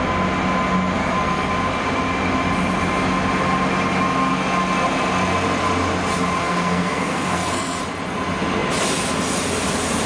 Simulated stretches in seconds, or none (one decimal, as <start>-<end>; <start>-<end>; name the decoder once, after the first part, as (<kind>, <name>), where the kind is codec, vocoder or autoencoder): 1.0-1.5 (codec, SNAC); 6.4-7.8